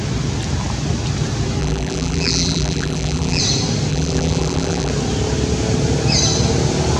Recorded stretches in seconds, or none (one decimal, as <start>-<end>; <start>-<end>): 0.0-1.6; 3.4-3.9; 4.9-7.0